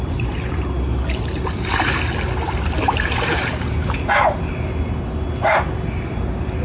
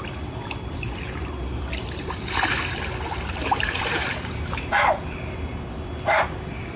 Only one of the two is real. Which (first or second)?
first